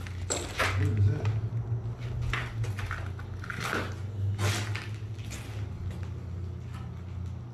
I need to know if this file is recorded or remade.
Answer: recorded